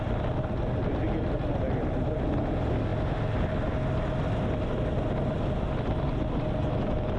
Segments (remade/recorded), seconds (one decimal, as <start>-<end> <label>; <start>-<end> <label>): 0.0-7.2 recorded